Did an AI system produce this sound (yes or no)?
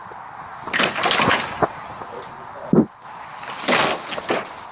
no